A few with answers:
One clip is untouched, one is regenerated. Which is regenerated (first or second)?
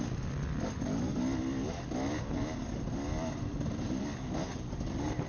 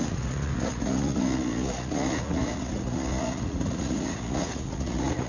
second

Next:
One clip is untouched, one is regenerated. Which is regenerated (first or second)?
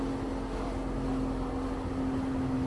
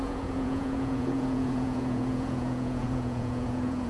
second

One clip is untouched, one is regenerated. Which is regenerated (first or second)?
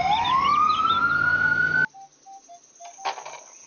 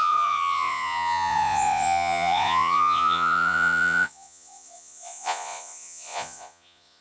second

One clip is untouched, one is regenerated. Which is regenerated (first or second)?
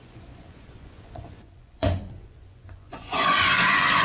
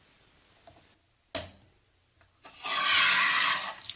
first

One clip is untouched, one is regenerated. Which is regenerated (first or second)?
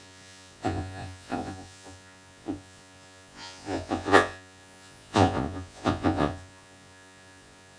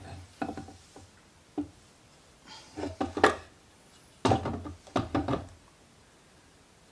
first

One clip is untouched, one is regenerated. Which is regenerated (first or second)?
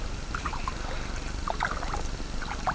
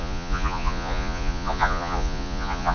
second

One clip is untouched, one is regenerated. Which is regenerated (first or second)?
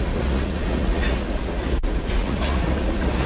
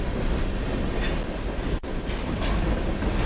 first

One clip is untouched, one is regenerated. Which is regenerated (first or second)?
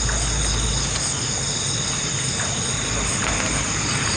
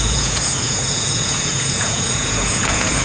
second